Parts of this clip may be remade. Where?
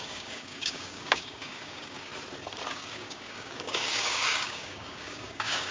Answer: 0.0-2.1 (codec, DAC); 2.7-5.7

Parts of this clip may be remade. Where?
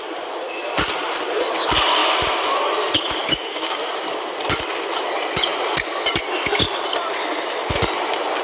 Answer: 3.2-3.8 (codec, DAC)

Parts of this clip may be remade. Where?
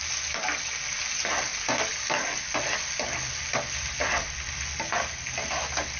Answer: none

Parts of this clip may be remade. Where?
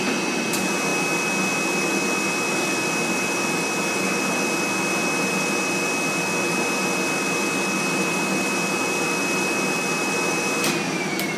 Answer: none